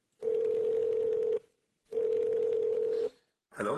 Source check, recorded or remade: remade